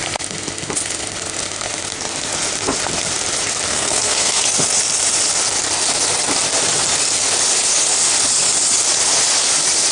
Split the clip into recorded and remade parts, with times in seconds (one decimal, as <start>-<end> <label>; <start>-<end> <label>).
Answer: 0.0-3.7 recorded; 3.7-4.4 remade; 4.4-9.9 recorded